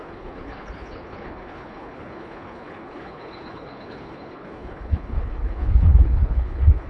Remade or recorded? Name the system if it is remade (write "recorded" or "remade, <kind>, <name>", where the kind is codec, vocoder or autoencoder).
remade, codec, HILCodec